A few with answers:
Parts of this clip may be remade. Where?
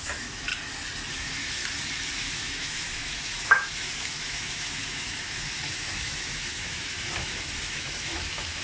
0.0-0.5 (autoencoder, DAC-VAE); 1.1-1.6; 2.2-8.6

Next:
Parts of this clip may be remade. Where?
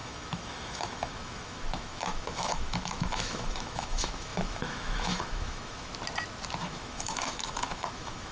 0.0-5.9 (autoencoder, DAC-VAE); 6.6-8.3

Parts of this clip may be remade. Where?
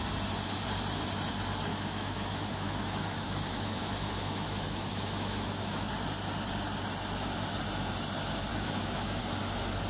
1.7-5.9 (autoencoder, DAC-VAE); 8.5-9.2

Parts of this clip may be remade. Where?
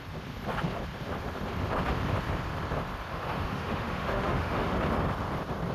3.1-4.8 (autoencoder, DAC-VAE)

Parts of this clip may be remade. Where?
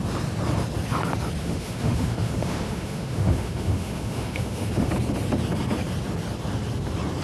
1.4-4.9 (autoencoder, DAC-VAE)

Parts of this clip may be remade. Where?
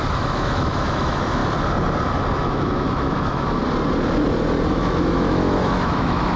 0.0-1.4 (autoencoder, DAC-VAE); 2.4-3.6; 4.7-6.4